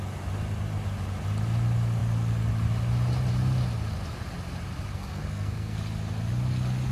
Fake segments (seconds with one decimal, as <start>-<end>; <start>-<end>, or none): 4.9-5.8